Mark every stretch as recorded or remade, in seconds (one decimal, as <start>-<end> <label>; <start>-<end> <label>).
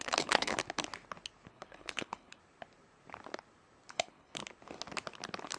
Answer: 0.0-0.6 remade; 0.6-1.5 recorded; 1.5-2.4 remade; 2.4-3.9 recorded; 3.9-4.4 remade; 4.4-5.6 recorded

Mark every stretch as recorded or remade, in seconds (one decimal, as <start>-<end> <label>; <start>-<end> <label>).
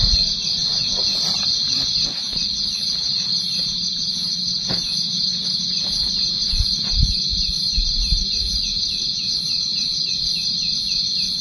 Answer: 0.0-8.8 recorded; 8.8-9.4 remade; 9.4-11.4 recorded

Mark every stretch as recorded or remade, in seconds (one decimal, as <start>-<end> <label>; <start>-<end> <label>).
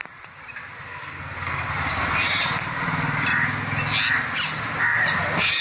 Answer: 0.0-0.9 recorded; 0.9-1.7 remade; 1.7-5.6 recorded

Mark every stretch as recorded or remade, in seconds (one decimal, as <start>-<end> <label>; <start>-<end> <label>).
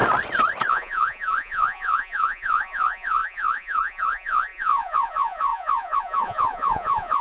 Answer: 0.0-0.7 recorded; 0.7-7.2 remade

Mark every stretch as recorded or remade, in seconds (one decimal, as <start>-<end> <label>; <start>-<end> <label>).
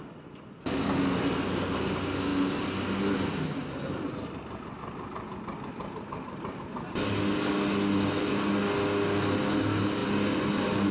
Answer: 0.0-10.9 recorded